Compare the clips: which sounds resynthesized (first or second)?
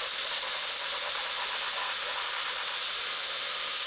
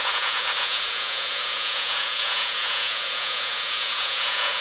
second